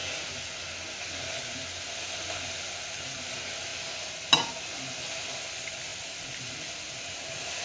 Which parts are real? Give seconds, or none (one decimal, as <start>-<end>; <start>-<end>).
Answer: 0.0-7.6